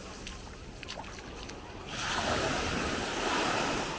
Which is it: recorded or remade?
recorded